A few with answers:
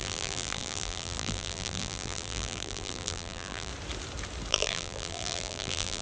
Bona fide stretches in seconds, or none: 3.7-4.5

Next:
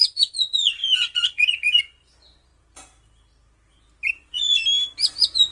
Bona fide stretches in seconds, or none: 2.5-4.1; 4.6-5.1